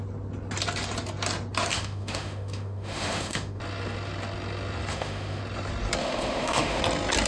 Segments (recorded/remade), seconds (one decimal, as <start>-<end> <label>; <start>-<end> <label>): 0.0-1.7 recorded; 1.7-3.6 remade; 3.6-4.9 recorded; 4.9-5.4 remade; 5.4-6.0 recorded; 6.0-6.8 remade; 6.8-7.3 recorded